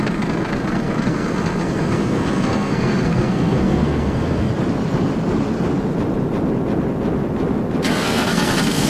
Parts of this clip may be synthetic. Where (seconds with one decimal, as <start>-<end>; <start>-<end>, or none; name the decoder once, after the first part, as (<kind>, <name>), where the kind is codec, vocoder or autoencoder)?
0.0-4.5 (codec, SNAC); 7.9-8.9